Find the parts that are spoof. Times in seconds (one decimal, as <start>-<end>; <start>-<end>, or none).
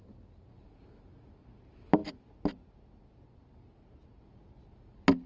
none